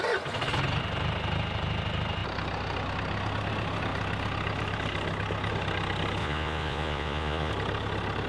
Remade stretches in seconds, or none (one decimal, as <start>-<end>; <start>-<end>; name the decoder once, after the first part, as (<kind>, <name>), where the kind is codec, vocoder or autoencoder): 6.2-7.5 (vocoder, Vocos)